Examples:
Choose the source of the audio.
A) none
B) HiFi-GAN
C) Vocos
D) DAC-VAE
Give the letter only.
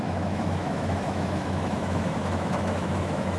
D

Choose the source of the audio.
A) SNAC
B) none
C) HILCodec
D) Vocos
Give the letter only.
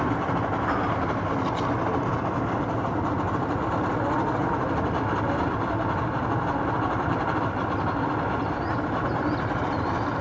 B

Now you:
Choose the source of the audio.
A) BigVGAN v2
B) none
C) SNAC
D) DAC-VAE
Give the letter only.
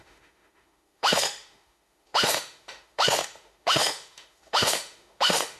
D